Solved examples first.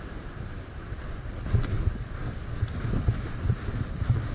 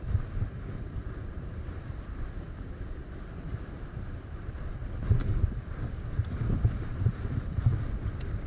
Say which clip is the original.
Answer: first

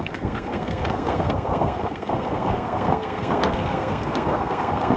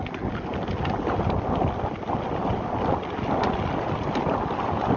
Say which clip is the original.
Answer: second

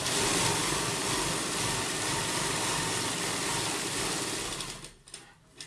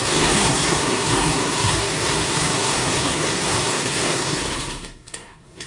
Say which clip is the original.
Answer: first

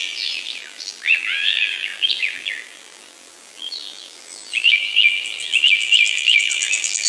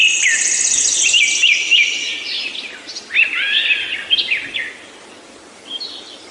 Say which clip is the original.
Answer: second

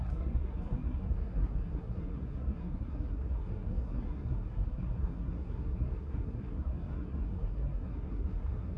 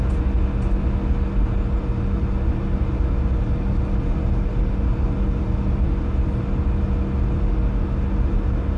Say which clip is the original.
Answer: second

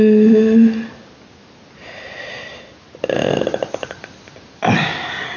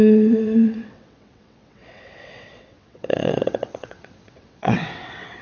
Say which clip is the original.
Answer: first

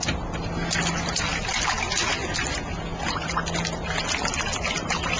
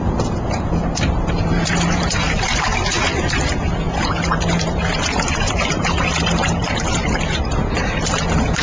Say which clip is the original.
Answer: first